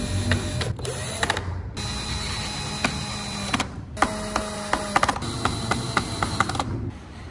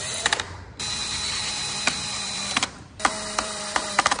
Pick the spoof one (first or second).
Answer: second